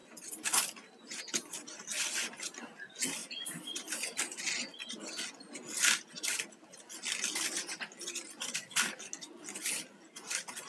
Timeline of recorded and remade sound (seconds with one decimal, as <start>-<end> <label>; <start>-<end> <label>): 0.0-10.7 recorded